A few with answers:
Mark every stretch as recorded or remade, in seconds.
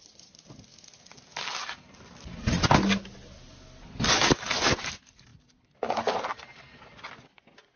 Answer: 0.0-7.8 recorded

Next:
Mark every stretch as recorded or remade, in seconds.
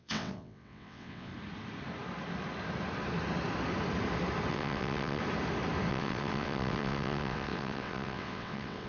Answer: 0.0-1.3 remade; 1.3-4.5 recorded; 4.5-5.2 remade; 5.2-5.9 recorded; 5.9-8.9 remade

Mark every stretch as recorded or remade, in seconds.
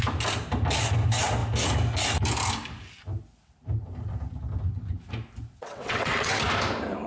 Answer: 0.0-5.5 recorded; 5.5-6.4 remade; 6.4-7.1 recorded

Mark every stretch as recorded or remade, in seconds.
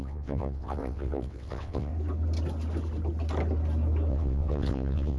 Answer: 0.0-1.9 remade; 1.9-4.1 recorded; 4.1-5.2 remade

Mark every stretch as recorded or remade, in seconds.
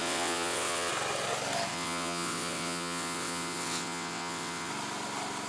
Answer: 0.0-0.9 remade; 0.9-1.7 recorded; 1.7-4.7 remade; 4.7-5.5 recorded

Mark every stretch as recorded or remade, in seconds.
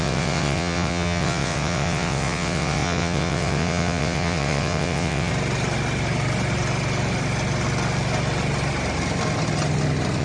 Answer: 0.0-5.3 remade; 5.3-10.2 recorded